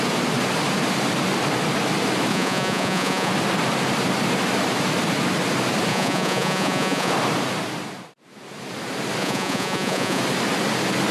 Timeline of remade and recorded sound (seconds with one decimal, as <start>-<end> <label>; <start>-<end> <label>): 0.0-2.3 recorded; 2.3-3.3 remade; 3.3-5.9 recorded; 5.9-7.1 remade; 7.1-9.2 recorded; 9.2-10.2 remade; 10.2-11.1 recorded